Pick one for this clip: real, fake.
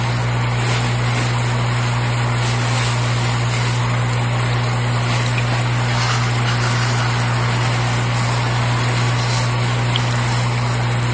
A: real